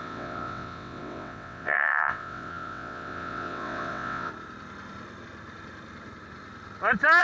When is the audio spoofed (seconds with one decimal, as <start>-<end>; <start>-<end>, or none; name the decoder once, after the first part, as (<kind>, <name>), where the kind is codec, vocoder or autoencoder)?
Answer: 0.0-4.3 (vocoder, WaveNeXt)